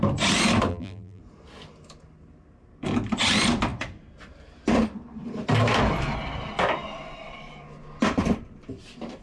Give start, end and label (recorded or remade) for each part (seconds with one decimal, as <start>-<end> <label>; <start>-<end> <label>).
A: 0.0-0.7 recorded; 0.7-1.2 remade; 1.2-9.2 recorded